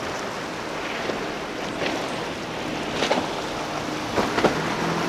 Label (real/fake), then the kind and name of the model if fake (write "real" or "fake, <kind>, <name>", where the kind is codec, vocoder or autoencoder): real